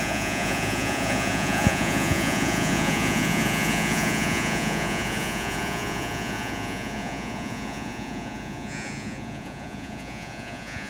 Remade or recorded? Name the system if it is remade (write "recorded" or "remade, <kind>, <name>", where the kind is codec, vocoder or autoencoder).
remade, vocoder, Vocos